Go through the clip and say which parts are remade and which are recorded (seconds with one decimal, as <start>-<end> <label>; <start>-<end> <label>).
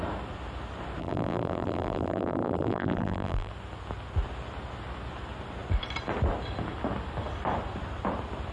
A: 0.0-1.0 recorded; 1.0-3.5 remade; 3.5-8.5 recorded